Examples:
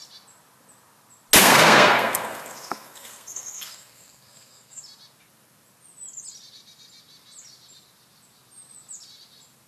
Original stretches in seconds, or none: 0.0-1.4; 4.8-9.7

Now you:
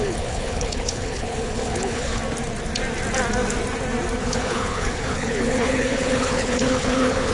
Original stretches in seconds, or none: 2.2-4.2

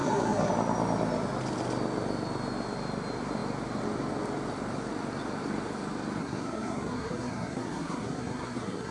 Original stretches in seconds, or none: 0.5-6.2